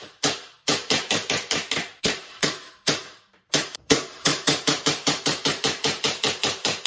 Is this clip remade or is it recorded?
remade